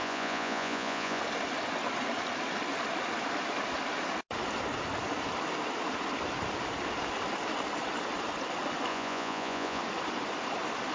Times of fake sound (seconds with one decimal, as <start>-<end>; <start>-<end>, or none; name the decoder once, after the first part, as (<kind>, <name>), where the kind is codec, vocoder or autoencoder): 0.0-1.2 (vocoder, Vocos); 8.9-9.8